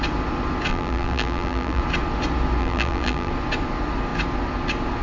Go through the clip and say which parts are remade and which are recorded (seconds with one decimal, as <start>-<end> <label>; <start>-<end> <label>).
0.0-0.7 recorded; 0.7-1.8 remade; 1.8-2.6 recorded; 2.6-3.3 remade; 3.3-5.0 recorded